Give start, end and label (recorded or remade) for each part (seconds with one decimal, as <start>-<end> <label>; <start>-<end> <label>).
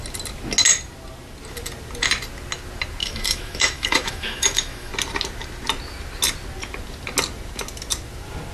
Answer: 0.0-3.0 recorded; 3.0-4.9 remade; 4.9-8.5 recorded